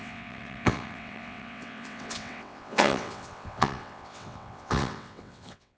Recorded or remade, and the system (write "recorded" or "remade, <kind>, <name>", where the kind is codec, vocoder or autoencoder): remade, vocoder, WaveNeXt